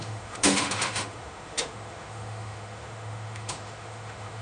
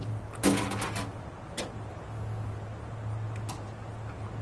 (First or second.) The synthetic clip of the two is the first